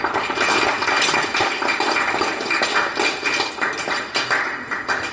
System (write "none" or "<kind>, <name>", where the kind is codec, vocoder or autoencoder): none